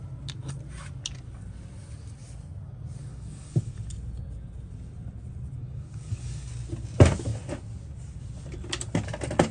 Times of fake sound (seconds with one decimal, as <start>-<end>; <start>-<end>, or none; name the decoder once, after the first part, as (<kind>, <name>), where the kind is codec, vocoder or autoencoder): 3.1-3.7 (codec, DAC); 5.6-6.5